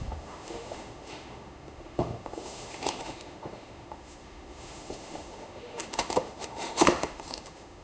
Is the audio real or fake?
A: fake